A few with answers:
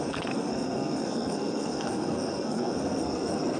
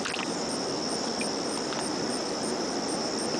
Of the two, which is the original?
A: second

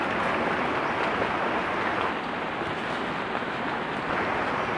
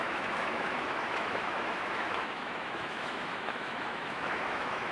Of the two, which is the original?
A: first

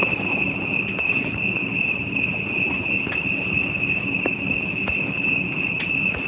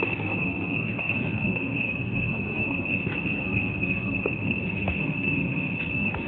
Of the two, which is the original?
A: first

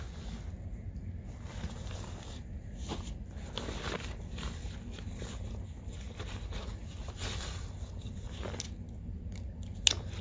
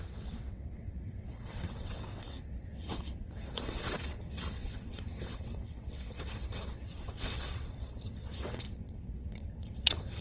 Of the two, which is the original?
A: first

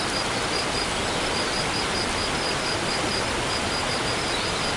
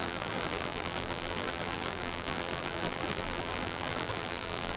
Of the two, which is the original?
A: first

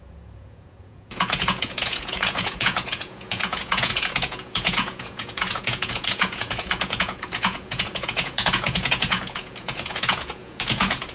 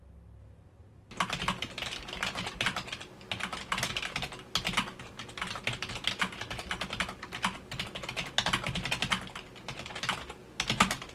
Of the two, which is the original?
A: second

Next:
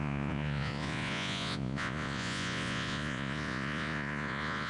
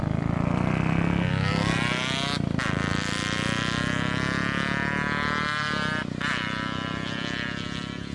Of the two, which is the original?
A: second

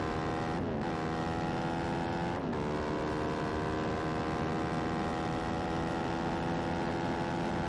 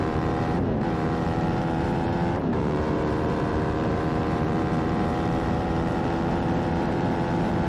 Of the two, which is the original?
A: first